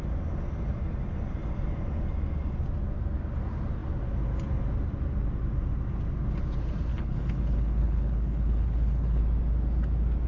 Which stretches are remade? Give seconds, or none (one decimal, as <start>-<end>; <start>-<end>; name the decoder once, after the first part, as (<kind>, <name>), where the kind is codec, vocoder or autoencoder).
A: 6.9-9.2 (codec, HILCodec)

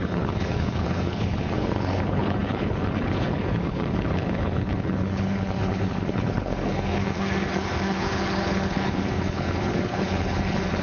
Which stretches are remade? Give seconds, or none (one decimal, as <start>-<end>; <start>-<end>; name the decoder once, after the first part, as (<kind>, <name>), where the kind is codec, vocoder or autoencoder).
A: 0.0-10.8 (codec, HILCodec)

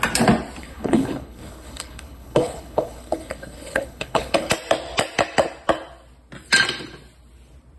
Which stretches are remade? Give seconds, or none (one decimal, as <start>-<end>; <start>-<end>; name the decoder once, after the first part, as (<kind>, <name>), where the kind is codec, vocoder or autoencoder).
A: 0.6-4.5 (codec, HILCodec)